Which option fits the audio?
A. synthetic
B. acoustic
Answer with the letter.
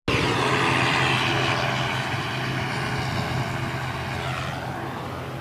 B